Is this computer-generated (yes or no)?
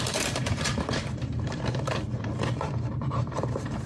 yes